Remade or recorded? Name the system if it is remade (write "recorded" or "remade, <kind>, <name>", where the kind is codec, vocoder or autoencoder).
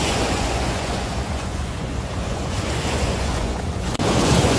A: remade, vocoder, Vocos